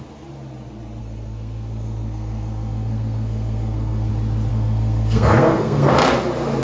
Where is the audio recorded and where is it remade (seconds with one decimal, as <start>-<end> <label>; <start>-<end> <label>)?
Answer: 0.0-1.0 recorded; 1.0-4.1 remade; 4.1-4.5 recorded; 4.5-5.9 remade; 5.9-6.6 recorded